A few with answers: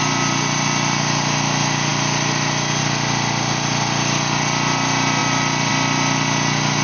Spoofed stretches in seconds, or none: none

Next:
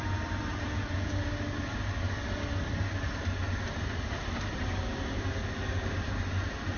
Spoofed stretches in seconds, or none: 0.5-1.1 (vocoder, Vocos)

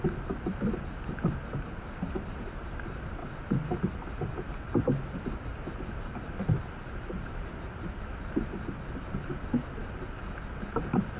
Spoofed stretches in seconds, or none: none

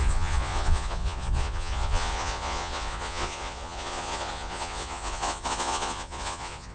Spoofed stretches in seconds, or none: 0.0-6.7 (vocoder, Vocos)

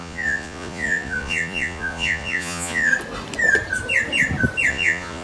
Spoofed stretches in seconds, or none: 0.0-2.9 (vocoder, Vocos); 4.7-5.2

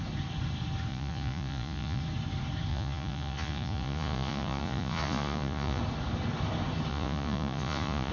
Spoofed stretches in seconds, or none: 0.9-2.0 (vocoder, Vocos); 2.7-5.8; 6.9-8.1